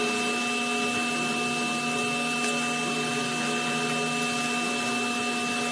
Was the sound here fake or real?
real